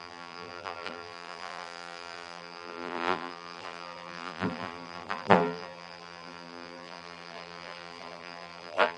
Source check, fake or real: fake